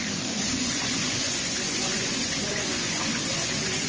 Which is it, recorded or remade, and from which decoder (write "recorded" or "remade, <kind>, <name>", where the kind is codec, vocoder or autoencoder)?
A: remade, vocoder, Vocos